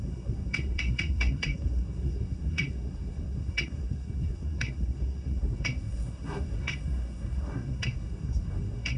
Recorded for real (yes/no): no